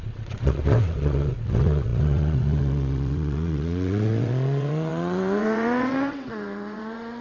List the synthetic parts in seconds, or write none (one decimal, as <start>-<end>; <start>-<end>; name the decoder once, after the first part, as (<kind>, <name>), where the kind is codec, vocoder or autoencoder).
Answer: 0.0-7.2 (vocoder, WaveNeXt)